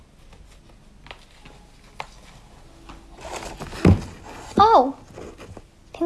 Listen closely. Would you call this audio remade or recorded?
recorded